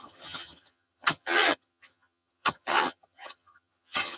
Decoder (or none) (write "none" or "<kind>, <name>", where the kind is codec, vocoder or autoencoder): vocoder, HiFi-GAN